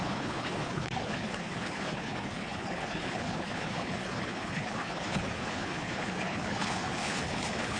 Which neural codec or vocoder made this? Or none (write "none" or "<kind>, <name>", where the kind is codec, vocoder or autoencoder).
codec, HILCodec